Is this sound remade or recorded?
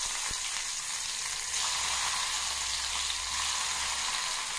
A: recorded